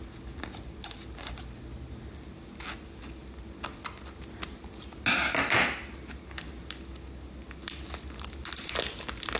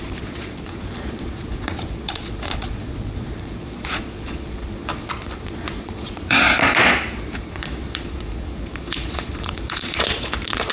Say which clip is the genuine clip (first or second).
first